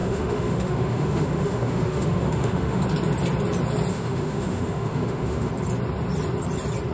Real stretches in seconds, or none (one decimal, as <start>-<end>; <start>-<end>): 2.8-3.9; 5.5-6.9